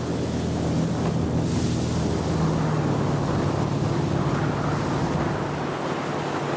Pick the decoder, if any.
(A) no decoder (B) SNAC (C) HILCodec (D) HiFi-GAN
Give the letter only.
A